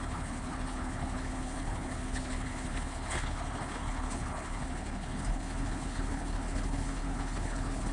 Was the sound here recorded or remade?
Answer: remade